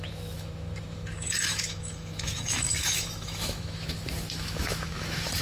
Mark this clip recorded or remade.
remade